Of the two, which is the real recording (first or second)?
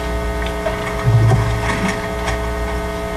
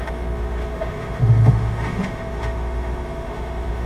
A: first